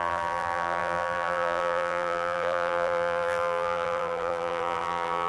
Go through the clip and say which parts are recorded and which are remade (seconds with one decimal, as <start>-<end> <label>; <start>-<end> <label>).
0.0-5.3 remade